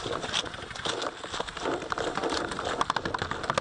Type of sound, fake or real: real